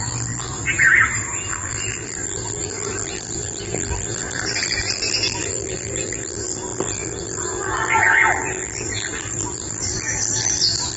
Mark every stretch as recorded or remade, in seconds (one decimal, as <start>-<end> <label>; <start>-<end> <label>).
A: 0.0-0.5 remade; 0.5-1.5 recorded; 1.5-11.0 remade